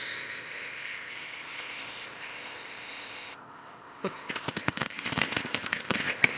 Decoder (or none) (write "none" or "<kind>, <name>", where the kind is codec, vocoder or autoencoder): codec, ZipCodec